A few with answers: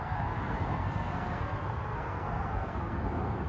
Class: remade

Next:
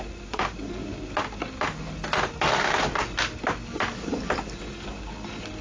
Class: recorded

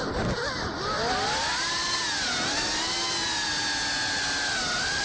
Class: recorded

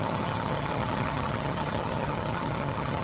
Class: remade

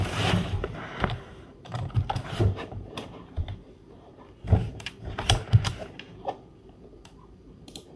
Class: remade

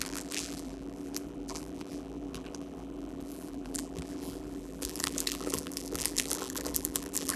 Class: remade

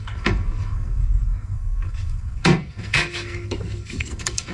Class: remade